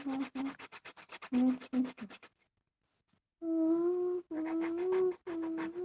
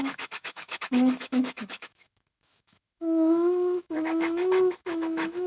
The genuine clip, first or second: first